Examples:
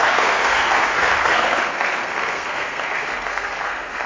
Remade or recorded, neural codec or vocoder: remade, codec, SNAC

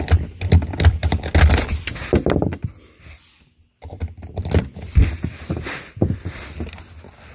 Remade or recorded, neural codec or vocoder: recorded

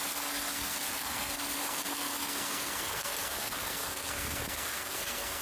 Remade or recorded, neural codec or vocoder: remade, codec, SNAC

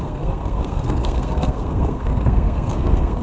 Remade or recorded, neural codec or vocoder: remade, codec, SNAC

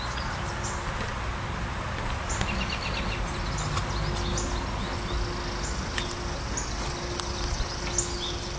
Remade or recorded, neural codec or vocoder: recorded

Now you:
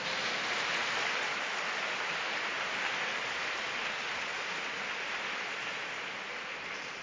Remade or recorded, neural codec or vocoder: recorded